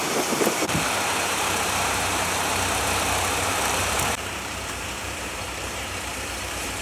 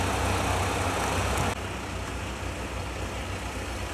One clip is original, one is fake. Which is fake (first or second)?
first